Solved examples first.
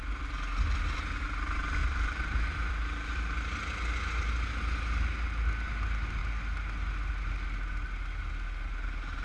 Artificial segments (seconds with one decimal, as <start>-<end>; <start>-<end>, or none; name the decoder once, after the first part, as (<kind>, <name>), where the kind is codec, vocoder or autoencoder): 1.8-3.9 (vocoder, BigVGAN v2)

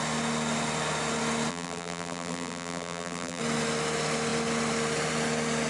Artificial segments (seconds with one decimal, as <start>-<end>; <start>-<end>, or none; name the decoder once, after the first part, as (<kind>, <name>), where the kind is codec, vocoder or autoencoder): 1.5-3.4 (vocoder, BigVGAN v2)

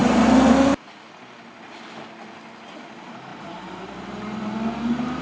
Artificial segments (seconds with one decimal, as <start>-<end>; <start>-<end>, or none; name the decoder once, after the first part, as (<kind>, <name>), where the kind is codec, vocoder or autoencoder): 3.3-4.7 (vocoder, BigVGAN v2)